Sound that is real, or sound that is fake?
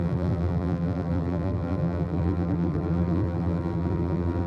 fake